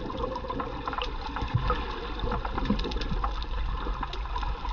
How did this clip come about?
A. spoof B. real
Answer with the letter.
B